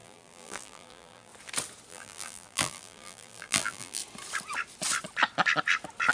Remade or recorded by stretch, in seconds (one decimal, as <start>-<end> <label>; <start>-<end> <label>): 0.0-1.3 remade; 1.3-1.9 recorded; 1.9-4.0 remade; 4.0-6.1 recorded